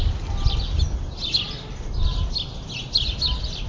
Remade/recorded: recorded